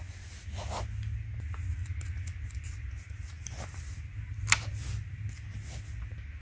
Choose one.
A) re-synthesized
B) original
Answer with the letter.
B